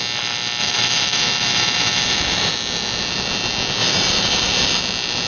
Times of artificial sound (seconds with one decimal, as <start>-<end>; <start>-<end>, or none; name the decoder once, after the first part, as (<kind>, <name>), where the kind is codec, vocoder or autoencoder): 0.6-2.5 (vocoder, BigVGAN v2); 3.8-4.8